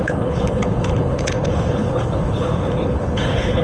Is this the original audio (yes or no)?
no